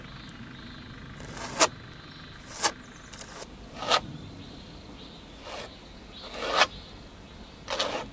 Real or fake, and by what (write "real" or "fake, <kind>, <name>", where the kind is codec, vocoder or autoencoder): real